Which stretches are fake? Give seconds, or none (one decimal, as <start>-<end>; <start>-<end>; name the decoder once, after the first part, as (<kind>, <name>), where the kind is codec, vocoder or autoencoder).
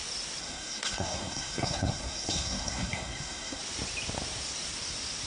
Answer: 0.4-3.6 (codec, SNAC)